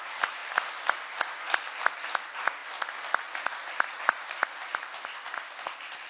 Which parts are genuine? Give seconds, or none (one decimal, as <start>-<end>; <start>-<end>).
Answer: 2.6-4.0; 4.7-6.1